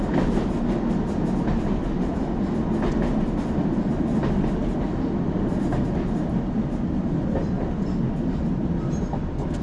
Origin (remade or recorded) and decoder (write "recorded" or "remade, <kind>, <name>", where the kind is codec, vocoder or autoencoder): recorded